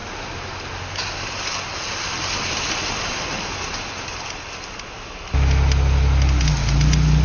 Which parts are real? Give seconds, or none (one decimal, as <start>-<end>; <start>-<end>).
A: 0.0-7.2